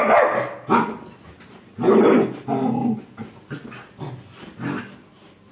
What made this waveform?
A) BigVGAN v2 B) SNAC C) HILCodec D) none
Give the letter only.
D